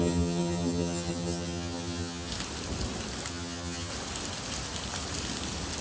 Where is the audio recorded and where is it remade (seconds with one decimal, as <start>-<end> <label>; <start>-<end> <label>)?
0.0-2.3 remade; 2.3-3.3 recorded; 3.3-3.9 remade; 3.9-5.8 recorded